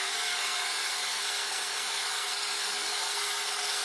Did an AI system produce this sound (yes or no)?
yes